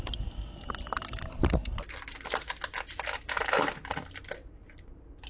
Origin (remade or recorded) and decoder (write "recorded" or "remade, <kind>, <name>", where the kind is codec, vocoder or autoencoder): recorded